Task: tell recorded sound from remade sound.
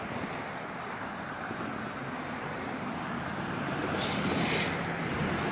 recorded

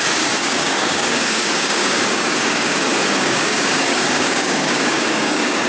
remade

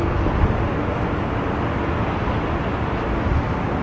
recorded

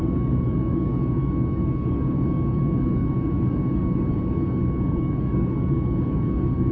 remade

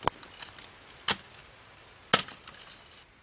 recorded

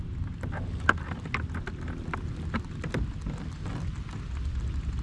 recorded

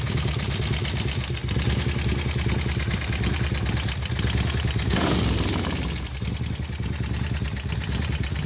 recorded